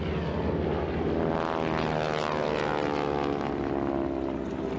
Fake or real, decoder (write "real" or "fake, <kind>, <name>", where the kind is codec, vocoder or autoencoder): real